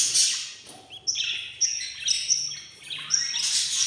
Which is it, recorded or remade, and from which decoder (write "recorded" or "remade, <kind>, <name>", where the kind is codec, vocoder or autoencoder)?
recorded